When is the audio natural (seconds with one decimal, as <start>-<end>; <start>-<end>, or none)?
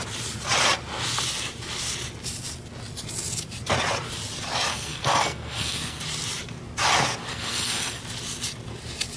0.0-4.7; 6.0-7.3; 8.0-9.2